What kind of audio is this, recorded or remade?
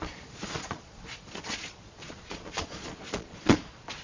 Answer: remade